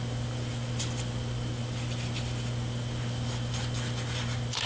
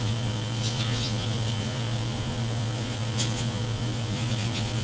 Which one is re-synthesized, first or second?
second